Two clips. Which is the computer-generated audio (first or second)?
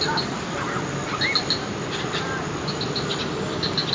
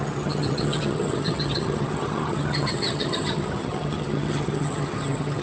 second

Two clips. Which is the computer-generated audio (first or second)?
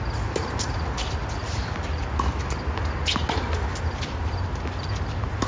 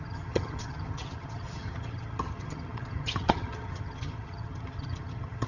second